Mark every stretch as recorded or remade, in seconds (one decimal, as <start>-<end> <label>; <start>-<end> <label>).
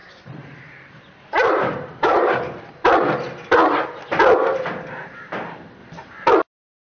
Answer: 0.0-2.6 remade; 2.6-6.9 recorded